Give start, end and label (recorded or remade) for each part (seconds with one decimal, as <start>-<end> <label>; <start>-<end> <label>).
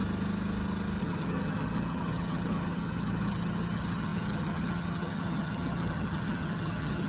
0.0-1.0 recorded; 1.0-7.1 remade